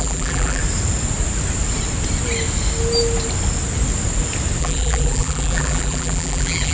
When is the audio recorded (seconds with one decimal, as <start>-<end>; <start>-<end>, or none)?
0.6-4.6

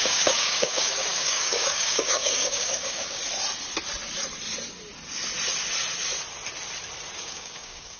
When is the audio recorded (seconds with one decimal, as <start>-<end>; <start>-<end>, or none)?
3.2-7.2

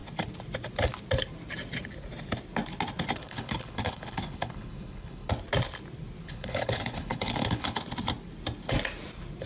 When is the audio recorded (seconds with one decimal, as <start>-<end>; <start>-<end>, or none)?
0.0-3.2; 5.3-6.2; 7.8-9.5